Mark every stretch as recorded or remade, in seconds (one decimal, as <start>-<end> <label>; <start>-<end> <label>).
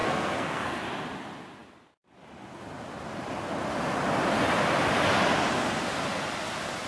0.0-0.8 remade; 0.8-6.9 recorded